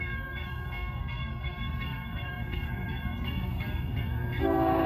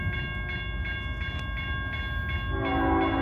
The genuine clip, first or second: second